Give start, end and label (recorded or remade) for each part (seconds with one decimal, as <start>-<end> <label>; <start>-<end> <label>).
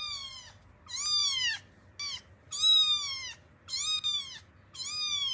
0.0-5.3 recorded